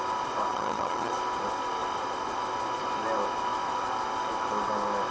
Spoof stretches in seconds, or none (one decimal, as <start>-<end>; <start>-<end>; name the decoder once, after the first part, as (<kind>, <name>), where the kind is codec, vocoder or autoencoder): 0.5-1.1 (vocoder, HiFi-GAN)